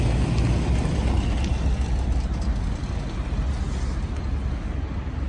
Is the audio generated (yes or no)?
no